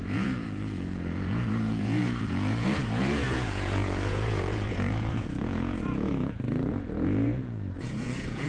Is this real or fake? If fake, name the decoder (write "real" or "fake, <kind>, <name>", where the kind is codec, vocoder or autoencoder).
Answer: fake, vocoder, Vocos